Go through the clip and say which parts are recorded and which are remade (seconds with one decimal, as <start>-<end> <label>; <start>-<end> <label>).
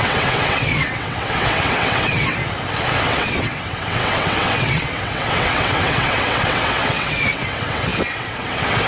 0.0-2.4 remade; 2.4-3.0 recorded; 3.0-8.9 remade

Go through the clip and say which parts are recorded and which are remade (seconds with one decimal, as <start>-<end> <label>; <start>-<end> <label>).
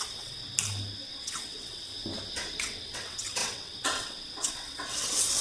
0.0-0.4 remade; 0.4-1.1 recorded; 1.1-1.9 remade; 1.9-2.6 recorded; 2.6-5.4 remade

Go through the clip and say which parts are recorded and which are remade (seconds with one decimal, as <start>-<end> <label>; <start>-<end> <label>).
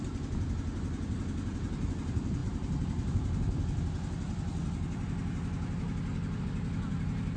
0.0-7.4 recorded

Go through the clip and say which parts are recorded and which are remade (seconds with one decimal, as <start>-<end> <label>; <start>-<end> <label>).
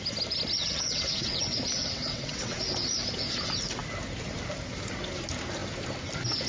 0.0-0.6 recorded; 0.6-1.4 remade; 1.4-1.8 recorded; 1.8-2.6 remade; 2.6-6.5 recorded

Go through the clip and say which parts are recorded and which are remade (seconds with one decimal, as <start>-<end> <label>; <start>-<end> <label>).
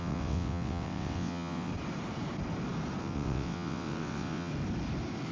0.0-1.7 remade; 1.7-3.0 recorded; 3.0-4.5 remade; 4.5-5.3 recorded